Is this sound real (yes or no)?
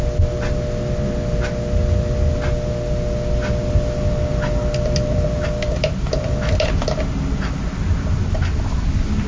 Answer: yes